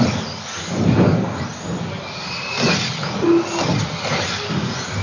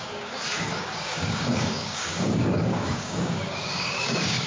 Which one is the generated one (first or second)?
second